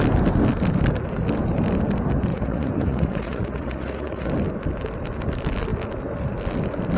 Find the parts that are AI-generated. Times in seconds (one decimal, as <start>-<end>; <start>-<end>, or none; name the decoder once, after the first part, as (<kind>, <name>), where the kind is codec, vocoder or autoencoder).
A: 2.3-4.3 (vocoder, Vocos)